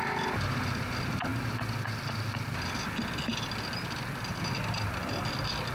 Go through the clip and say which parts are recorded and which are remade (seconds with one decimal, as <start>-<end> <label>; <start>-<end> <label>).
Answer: 0.0-5.7 recorded